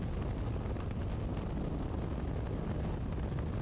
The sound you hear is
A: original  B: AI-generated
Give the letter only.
A